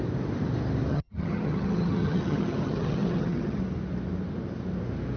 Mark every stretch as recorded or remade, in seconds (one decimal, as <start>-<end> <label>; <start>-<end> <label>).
0.0-0.9 recorded; 0.9-3.6 remade; 3.6-5.2 recorded